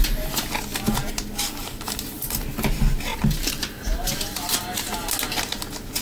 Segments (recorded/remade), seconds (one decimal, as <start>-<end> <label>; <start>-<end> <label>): 0.0-3.1 recorded; 3.1-4.6 remade; 4.6-6.0 recorded